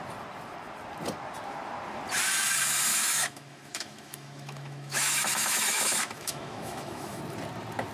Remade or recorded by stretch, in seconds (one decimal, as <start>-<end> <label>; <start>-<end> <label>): 0.0-2.9 recorded; 2.9-7.2 remade; 7.2-7.9 recorded